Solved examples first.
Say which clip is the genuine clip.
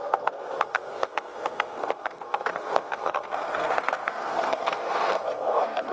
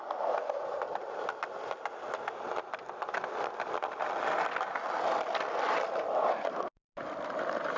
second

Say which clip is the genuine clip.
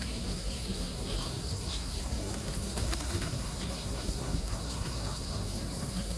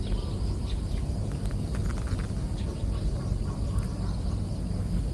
second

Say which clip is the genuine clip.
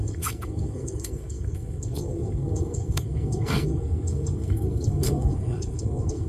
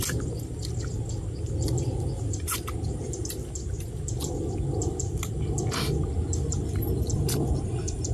second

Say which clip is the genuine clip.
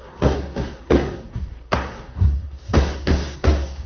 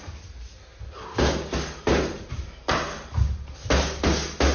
second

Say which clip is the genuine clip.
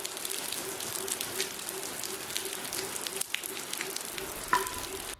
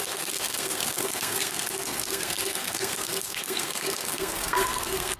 first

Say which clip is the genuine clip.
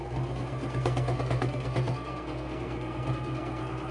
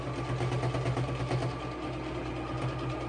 second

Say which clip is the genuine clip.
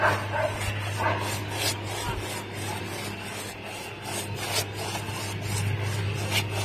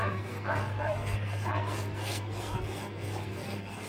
first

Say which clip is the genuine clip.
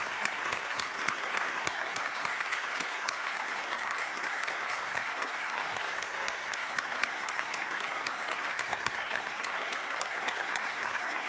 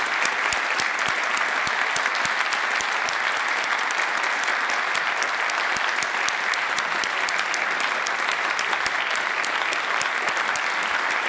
second